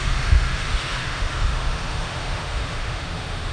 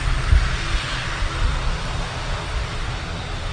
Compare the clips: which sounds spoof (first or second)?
first